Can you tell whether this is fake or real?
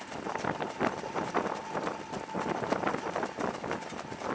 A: real